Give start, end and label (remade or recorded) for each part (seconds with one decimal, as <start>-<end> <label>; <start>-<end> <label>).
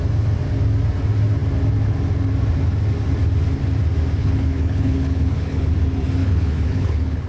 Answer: 0.0-4.2 recorded; 4.2-5.7 remade; 5.7-6.2 recorded; 6.2-7.3 remade